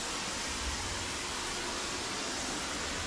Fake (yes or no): no